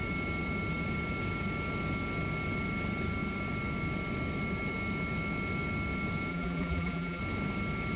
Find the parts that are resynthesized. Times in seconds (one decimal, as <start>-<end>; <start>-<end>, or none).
6.3-7.2